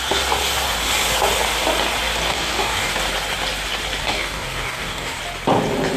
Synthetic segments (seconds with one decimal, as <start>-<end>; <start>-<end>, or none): 2.3-2.9; 4.0-5.2